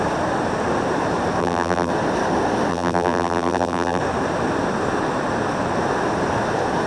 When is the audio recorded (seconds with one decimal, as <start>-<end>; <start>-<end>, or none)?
0.0-1.4; 1.9-2.7; 4.0-6.9